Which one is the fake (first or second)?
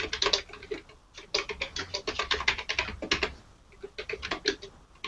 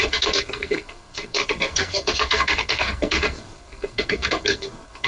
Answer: second